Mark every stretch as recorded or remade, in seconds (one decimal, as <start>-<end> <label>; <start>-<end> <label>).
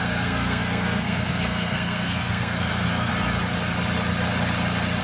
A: 0.0-3.1 remade; 3.1-5.0 recorded